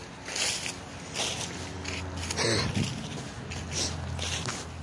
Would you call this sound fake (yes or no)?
no